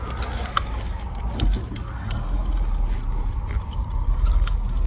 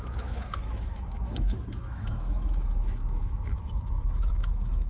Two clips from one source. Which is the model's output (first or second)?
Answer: second